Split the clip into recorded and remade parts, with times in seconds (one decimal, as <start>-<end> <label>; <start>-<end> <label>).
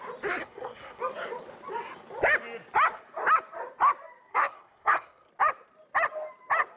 0.0-0.4 recorded; 0.4-1.0 remade; 1.0-4.3 recorded; 4.3-5.3 remade; 5.3-6.8 recorded